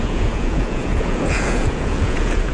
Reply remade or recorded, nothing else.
remade